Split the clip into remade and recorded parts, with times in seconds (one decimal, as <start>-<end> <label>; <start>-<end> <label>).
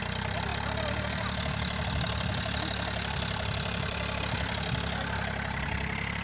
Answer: 0.0-6.2 recorded